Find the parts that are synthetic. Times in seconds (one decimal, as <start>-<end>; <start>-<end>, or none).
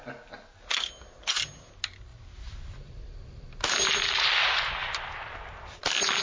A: 2.1-2.9; 4.8-5.8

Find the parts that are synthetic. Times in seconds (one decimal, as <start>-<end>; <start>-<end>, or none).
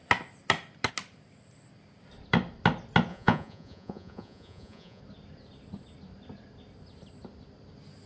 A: 3.1-5.0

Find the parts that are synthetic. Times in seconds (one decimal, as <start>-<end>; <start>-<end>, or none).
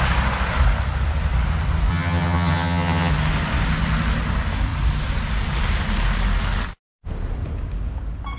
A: 1.9-3.1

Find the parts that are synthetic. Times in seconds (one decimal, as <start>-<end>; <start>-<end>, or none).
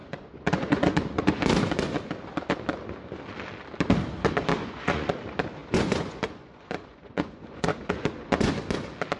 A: 0.0-1.4; 4.6-5.1; 5.6-8.5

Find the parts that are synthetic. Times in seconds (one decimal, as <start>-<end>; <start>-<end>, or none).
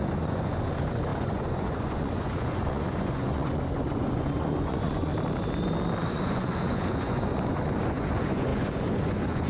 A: 0.0-5.1; 6.0-9.5